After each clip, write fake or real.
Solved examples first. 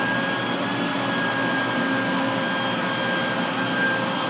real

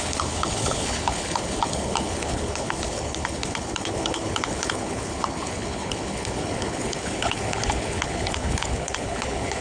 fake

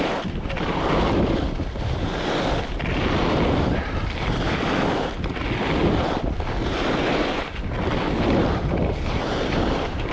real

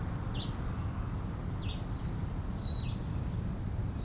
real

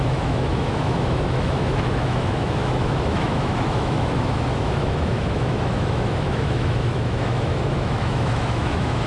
fake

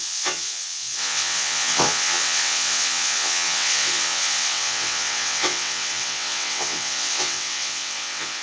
fake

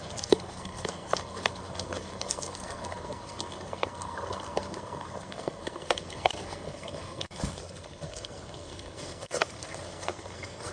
fake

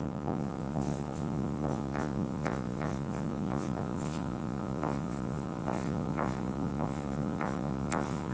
fake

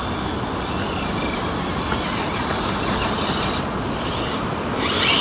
real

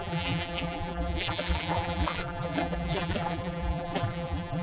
fake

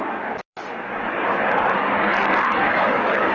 fake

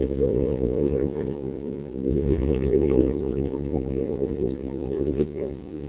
fake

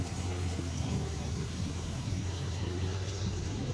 fake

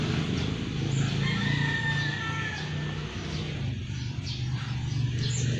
real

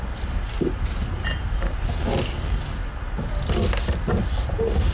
real